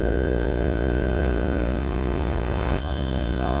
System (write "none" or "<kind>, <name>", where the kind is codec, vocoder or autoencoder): vocoder, Vocos